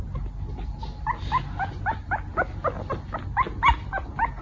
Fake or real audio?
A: real